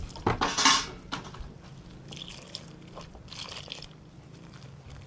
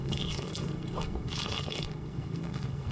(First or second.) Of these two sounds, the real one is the first